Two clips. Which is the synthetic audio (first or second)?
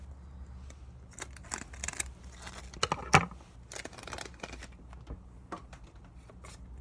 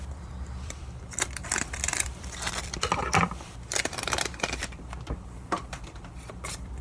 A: second